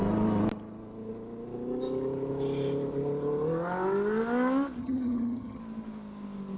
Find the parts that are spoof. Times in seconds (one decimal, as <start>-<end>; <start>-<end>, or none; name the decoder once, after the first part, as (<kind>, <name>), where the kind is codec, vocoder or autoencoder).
4.8-5.6 (vocoder, HiFi-GAN)